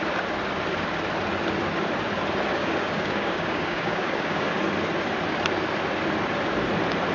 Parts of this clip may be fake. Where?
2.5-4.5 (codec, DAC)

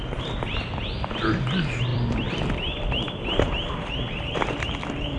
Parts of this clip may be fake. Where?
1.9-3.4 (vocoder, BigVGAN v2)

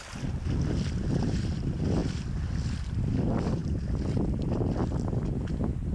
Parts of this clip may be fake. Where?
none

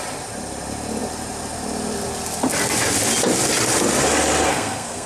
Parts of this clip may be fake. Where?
4.5-5.1 (codec, SNAC)

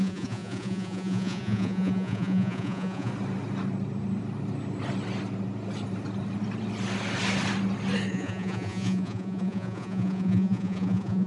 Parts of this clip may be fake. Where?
0.0-3.1 (vocoder, Vocos); 8.1-11.3

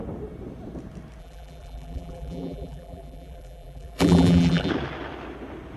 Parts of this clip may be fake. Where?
1.2-4.7 (vocoder, BigVGAN v2)

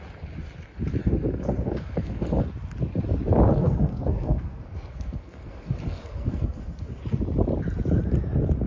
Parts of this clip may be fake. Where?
1.0-2.4 (codec, SNAC); 3.6-7.0

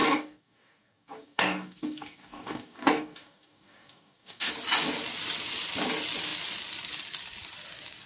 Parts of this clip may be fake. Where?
0.0-4.5 (codec, DAC)